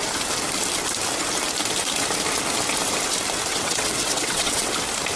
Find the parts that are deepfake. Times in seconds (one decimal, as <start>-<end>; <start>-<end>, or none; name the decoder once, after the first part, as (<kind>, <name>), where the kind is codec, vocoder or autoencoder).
3.5-4.7 (vocoder, WaveNeXt)